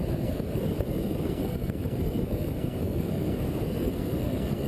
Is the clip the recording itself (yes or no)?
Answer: no